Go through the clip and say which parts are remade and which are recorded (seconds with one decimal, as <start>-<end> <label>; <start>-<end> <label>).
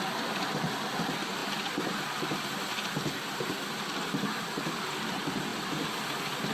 0.0-6.5 recorded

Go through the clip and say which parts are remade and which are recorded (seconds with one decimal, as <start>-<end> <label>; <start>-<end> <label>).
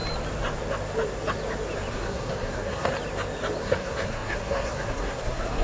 0.0-1.9 recorded; 1.9-2.9 remade; 2.9-3.6 recorded; 3.6-5.6 remade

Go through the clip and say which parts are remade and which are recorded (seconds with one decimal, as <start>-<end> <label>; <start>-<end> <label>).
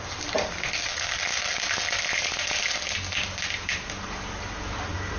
0.0-5.2 recorded